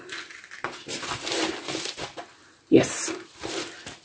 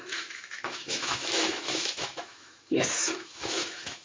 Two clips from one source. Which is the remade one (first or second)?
second